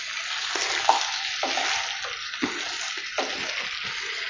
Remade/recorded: recorded